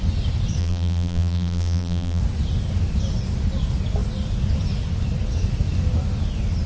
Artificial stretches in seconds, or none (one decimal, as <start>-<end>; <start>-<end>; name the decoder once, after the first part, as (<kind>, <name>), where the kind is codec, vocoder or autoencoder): 0.6-2.2 (vocoder, BigVGAN v2)